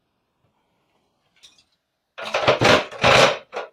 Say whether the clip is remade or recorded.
recorded